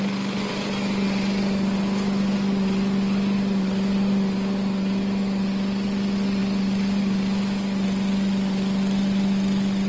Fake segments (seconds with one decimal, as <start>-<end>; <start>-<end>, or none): none